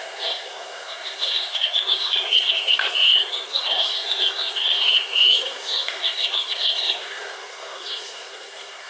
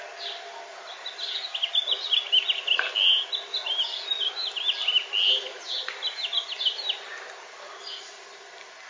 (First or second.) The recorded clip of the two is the second